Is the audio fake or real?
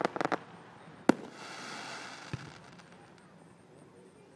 real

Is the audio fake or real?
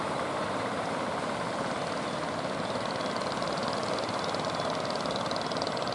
real